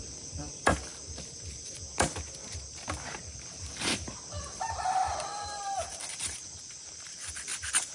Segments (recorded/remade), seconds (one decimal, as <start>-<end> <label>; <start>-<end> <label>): 0.0-0.9 remade; 0.9-4.7 recorded; 4.7-7.9 remade